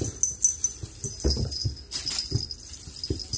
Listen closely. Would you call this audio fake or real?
real